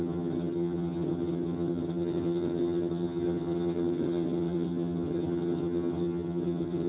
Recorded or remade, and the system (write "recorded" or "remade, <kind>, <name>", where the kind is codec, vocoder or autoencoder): remade, vocoder, HiFi-GAN